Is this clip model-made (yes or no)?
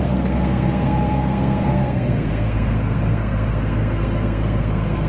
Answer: yes